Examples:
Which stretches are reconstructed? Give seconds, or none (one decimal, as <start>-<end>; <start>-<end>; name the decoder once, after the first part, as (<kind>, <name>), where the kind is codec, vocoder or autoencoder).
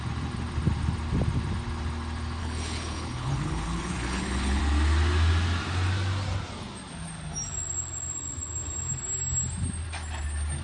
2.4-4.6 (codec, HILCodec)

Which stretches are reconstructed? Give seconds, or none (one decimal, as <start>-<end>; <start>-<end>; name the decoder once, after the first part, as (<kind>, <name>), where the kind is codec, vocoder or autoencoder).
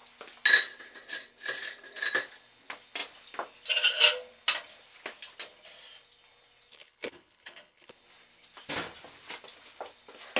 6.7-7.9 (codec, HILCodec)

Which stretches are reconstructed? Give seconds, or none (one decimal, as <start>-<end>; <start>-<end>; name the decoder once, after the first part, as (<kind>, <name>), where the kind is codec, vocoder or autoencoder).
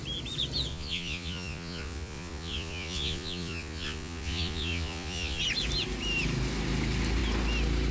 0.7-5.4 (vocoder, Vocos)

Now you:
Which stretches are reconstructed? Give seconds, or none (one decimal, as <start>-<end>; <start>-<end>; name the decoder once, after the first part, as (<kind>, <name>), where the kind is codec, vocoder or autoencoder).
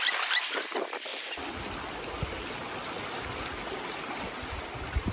none